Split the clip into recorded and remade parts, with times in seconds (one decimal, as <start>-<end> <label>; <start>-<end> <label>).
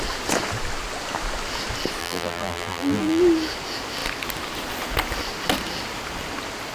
0.0-2.0 recorded; 2.0-3.2 remade; 3.2-6.7 recorded